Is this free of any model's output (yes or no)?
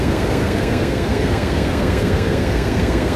no